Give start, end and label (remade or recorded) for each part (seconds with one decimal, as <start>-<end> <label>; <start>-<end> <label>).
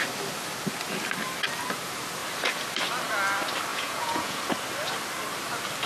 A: 0.0-3.7 recorded; 3.7-4.4 remade; 4.4-5.9 recorded